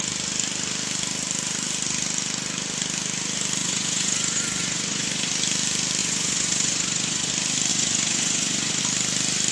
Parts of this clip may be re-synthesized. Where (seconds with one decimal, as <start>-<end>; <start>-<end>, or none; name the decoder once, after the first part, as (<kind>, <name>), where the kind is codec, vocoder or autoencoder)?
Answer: 3.6-5.3 (vocoder, Vocos); 6.0-7.3; 7.7-8.8

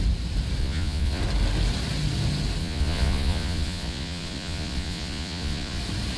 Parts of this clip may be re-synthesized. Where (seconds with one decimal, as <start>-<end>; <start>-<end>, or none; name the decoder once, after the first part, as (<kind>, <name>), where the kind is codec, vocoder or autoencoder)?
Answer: 0.6-1.2 (vocoder, Vocos); 2.6-5.8

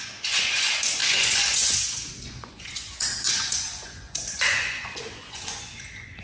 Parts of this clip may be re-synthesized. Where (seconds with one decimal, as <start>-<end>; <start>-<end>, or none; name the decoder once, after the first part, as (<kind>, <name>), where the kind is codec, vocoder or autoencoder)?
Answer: 0.0-6.2 (vocoder, Vocos)

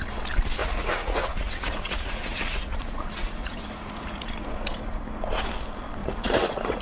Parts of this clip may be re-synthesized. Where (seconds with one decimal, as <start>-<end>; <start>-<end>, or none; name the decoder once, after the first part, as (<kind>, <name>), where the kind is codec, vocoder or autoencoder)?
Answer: 0.6-4.3 (vocoder, Vocos); 6.0-6.8

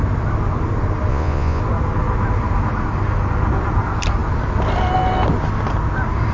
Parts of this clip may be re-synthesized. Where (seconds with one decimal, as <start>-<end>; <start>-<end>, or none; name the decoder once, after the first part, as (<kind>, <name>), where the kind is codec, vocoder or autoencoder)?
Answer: 1.1-1.6 (vocoder, Vocos)